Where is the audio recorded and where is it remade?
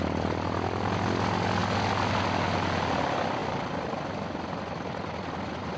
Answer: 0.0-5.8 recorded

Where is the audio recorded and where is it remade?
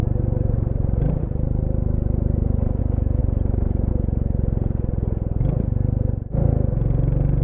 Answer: 0.0-2.8 remade; 2.8-3.2 recorded; 3.2-3.9 remade; 3.9-7.4 recorded